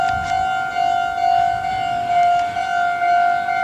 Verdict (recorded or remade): recorded